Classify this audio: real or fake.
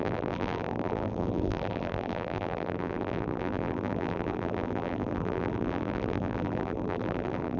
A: fake